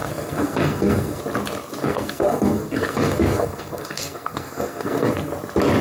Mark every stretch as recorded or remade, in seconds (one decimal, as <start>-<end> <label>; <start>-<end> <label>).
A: 0.0-1.2 remade; 1.2-1.8 recorded; 1.8-5.3 remade; 5.3-5.8 recorded